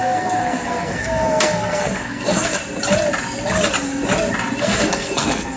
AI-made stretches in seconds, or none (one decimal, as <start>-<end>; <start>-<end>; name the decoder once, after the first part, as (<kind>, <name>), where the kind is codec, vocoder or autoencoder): 0.0-2.6 (codec, SNAC); 4.6-5.6